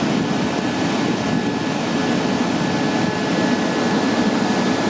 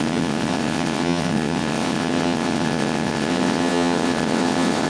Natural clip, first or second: first